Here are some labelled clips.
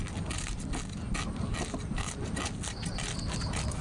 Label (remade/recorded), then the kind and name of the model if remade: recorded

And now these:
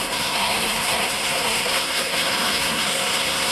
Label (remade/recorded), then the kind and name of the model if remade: remade, codec, SNAC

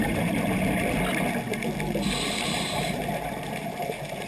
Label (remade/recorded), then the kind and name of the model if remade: recorded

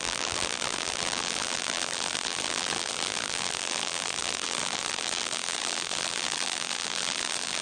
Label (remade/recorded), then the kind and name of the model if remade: remade, vocoder, BigVGAN v2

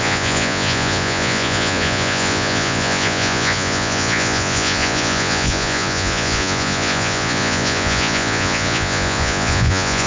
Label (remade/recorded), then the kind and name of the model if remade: remade, vocoder, Vocos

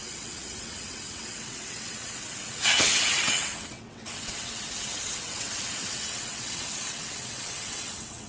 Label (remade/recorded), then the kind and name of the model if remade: remade, vocoder, WaveNeXt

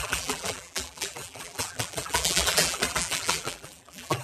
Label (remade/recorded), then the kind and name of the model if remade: remade, vocoder, BigVGAN v2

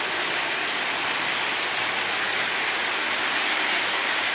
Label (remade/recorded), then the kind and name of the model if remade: recorded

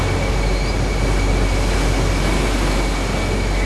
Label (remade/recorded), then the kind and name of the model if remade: recorded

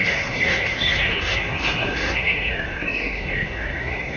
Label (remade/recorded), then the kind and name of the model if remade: remade, codec, SNAC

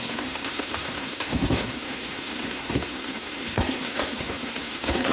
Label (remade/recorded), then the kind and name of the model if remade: remade, codec, SNAC